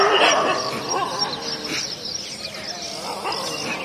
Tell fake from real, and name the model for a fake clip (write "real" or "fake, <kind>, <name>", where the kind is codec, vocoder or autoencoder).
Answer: real